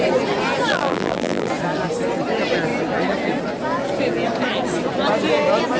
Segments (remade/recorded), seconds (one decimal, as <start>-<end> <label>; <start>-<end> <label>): 0.0-0.7 recorded; 0.7-1.5 remade; 1.5-5.8 recorded